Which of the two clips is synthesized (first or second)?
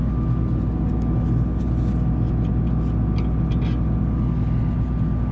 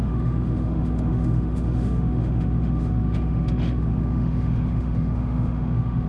second